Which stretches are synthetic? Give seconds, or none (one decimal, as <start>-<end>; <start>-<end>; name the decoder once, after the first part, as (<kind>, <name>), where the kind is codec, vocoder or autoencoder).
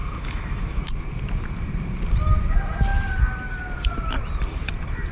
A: 0.0-0.8 (autoencoder, DAC-VAE)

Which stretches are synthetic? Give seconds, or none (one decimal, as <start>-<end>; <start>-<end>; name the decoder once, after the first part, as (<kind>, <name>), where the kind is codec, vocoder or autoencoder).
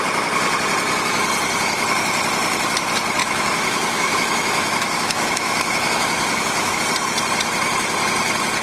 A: 3.2-6.8 (autoencoder, DAC-VAE)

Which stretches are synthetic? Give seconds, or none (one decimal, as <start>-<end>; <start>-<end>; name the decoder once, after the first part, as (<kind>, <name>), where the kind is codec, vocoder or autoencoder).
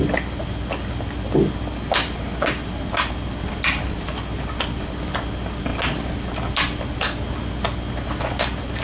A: none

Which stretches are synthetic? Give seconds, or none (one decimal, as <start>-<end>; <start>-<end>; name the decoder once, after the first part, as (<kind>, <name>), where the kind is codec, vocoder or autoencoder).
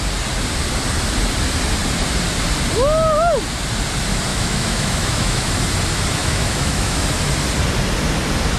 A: 4.3-5.5 (autoencoder, DAC-VAE); 6.2-7.0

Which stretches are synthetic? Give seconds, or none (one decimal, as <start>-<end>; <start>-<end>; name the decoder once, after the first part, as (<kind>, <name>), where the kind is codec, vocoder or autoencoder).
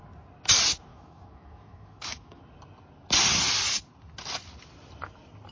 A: 0.9-2.4 (autoencoder, DAC-VAE)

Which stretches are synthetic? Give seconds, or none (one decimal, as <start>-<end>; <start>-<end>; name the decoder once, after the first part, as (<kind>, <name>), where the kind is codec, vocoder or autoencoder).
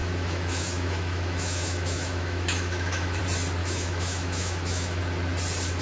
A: 0.0-3.2 (autoencoder, DAC-VAE); 3.6-5.0